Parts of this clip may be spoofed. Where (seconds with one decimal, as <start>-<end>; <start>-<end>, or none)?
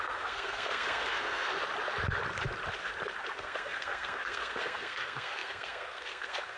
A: 0.0-1.5; 3.2-6.6